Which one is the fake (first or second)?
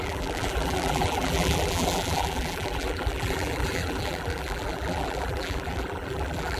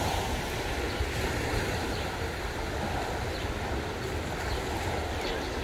first